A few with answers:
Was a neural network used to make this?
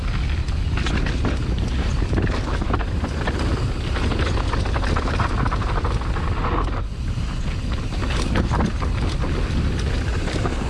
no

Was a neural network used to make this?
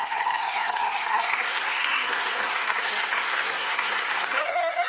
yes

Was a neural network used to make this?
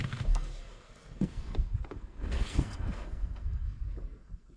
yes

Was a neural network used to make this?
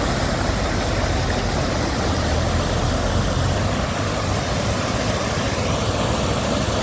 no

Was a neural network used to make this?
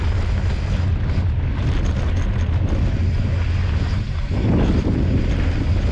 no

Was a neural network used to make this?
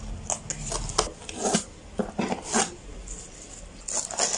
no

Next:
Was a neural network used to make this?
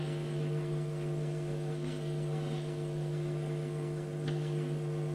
yes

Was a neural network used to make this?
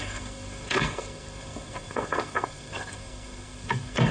yes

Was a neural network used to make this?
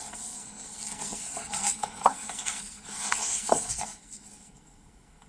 yes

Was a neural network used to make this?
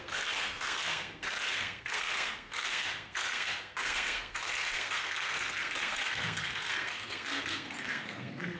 yes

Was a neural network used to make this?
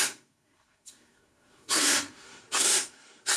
yes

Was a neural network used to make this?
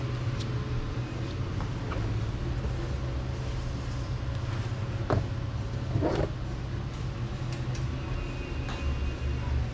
no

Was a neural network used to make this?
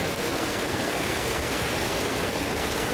yes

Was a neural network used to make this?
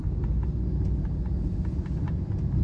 no